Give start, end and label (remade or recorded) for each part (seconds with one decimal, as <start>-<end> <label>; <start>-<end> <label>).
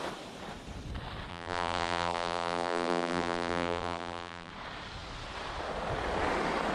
0.0-1.3 recorded; 1.3-4.5 remade; 4.5-6.7 recorded